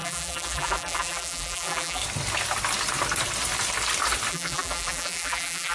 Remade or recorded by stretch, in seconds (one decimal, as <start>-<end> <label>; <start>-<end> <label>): 0.0-2.0 remade; 2.0-4.3 recorded; 4.3-5.7 remade